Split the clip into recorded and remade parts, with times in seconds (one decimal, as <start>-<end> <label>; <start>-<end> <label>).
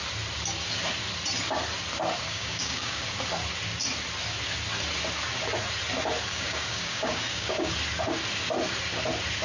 0.0-2.3 recorded; 2.3-3.0 remade; 3.0-6.3 recorded; 6.3-7.7 remade; 7.7-9.4 recorded